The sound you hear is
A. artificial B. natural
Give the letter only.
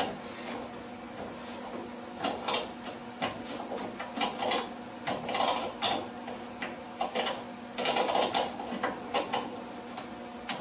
B